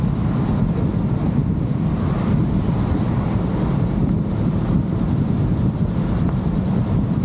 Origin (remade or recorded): recorded